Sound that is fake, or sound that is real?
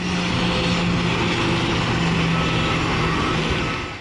real